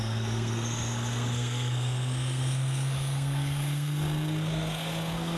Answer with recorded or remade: remade